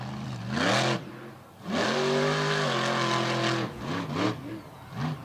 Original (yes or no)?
yes